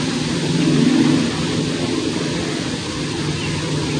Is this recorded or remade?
recorded